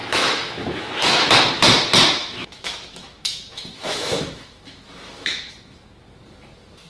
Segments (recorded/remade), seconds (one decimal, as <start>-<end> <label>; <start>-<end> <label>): 0.0-1.3 remade; 1.3-2.2 recorded; 2.2-5.9 remade; 5.9-6.9 recorded